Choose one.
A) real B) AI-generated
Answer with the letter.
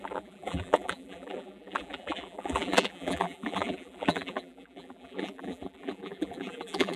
B